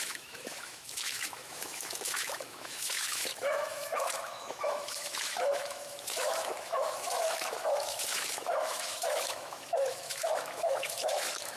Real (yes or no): no